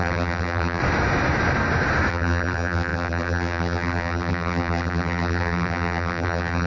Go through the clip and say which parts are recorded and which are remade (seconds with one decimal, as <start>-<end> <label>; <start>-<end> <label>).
0.0-0.8 remade; 0.8-2.1 recorded; 2.1-6.7 remade